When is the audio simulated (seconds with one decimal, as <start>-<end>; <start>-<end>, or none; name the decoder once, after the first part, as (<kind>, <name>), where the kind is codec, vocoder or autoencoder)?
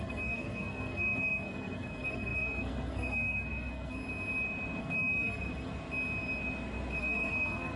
0.0-4.0 (codec, SNAC); 4.8-5.7; 7.0-7.8